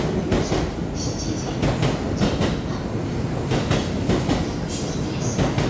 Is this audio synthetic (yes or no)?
no